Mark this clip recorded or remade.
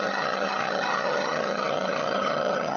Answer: remade